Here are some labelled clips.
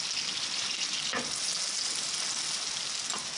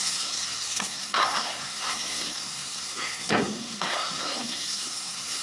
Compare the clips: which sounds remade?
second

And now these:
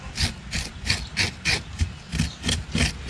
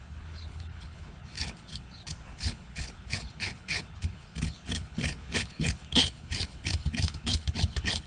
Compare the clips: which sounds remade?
second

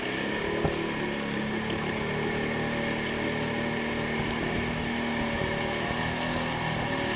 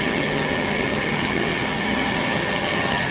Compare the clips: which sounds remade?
second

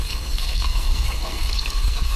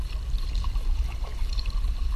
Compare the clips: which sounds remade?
first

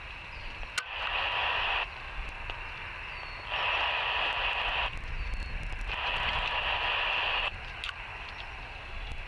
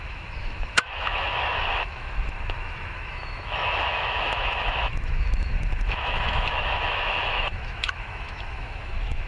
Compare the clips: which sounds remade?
second